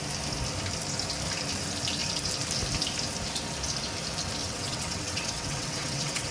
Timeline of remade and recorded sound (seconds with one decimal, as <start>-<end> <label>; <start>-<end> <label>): 0.0-4.4 recorded; 4.4-6.3 remade